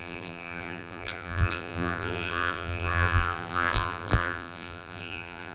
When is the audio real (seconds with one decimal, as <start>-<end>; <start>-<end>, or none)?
none